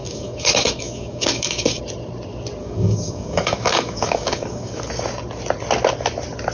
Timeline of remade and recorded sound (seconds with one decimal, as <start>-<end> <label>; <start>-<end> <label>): 0.0-1.8 remade; 1.8-2.6 recorded; 2.6-4.9 remade; 4.9-6.5 recorded